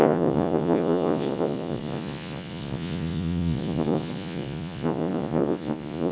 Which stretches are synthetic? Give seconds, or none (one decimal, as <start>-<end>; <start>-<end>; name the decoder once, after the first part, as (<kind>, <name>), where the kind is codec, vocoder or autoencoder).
0.0-6.1 (vocoder, Vocos)